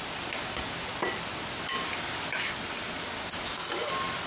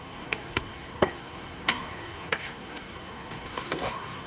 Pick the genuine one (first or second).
first